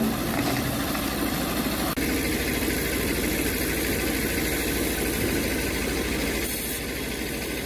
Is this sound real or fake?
real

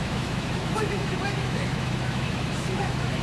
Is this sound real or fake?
fake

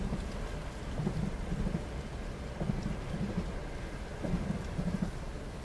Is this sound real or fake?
real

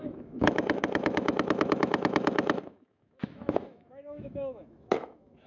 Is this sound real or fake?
fake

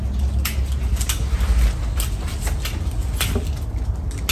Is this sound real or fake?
real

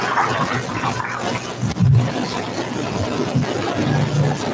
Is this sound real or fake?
real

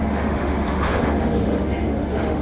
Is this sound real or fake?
fake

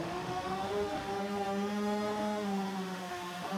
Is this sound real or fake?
fake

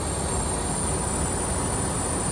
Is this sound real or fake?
real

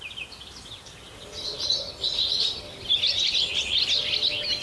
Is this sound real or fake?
real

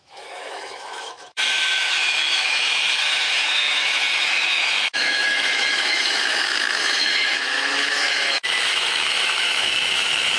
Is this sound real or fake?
fake